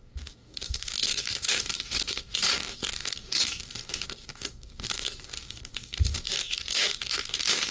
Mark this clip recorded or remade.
remade